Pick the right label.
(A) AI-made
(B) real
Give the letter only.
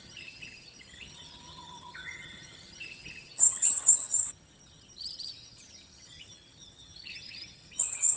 A